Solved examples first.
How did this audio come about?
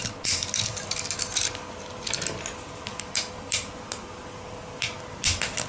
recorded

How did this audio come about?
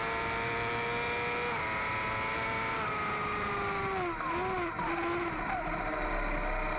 recorded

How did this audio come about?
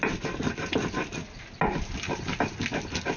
recorded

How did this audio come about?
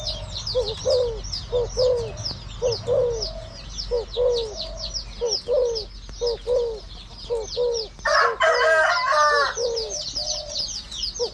recorded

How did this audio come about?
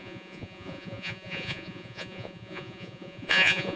remade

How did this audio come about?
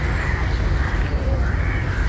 recorded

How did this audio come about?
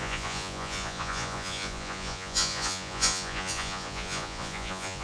remade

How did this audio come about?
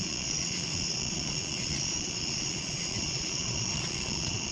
remade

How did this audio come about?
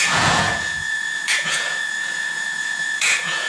remade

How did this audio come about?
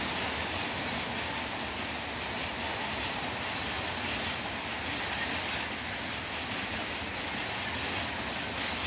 recorded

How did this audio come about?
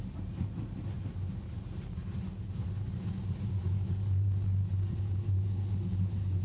recorded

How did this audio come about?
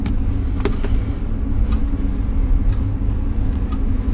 recorded